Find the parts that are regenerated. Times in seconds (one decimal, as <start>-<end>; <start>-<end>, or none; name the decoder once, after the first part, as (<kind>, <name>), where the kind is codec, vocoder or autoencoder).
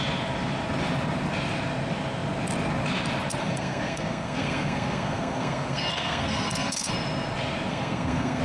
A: 3.4-6.9 (codec, SNAC); 7.7-8.4